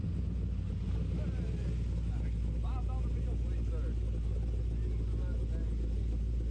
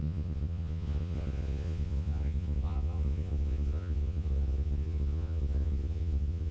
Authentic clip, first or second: first